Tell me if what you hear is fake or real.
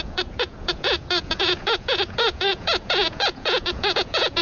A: fake